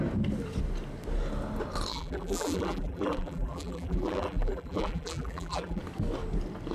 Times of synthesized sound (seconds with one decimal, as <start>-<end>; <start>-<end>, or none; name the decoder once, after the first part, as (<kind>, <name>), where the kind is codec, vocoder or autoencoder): 1.9-5.8 (vocoder, BigVGAN v2)